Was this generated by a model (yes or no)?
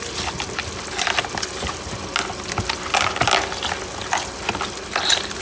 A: no